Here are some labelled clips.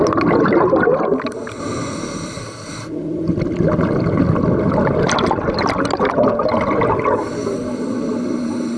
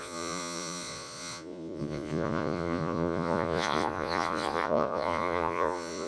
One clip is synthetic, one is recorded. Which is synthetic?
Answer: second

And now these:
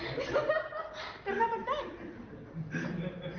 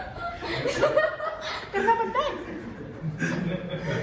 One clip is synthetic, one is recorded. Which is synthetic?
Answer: second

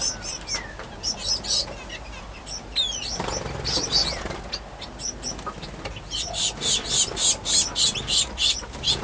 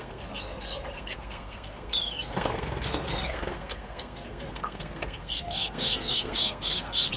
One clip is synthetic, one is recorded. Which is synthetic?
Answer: second